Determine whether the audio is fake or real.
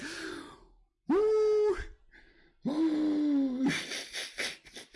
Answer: real